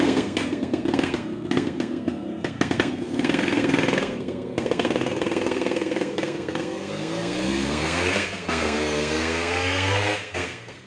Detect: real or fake fake